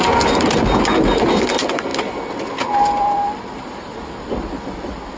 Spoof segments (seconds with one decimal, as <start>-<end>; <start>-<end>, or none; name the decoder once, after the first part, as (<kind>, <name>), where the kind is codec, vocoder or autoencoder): none

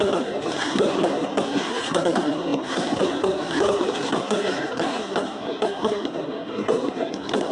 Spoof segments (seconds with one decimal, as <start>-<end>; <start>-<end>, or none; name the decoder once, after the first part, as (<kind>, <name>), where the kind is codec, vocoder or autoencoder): 0.0-7.5 (codec, SNAC)

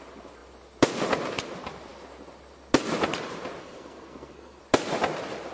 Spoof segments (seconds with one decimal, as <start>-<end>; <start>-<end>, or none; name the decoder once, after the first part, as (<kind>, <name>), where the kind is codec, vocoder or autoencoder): 3.6-4.6 (codec, SNAC)

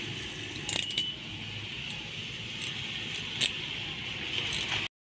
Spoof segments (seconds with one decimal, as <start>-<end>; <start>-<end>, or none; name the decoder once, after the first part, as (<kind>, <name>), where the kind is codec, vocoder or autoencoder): none

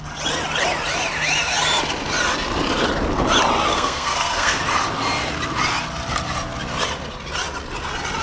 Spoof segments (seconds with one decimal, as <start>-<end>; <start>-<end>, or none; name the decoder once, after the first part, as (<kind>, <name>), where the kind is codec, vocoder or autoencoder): 3.7-4.6 (codec, SNAC)